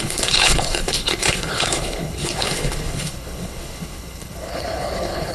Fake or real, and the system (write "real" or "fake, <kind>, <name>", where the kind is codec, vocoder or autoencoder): fake, codec, HILCodec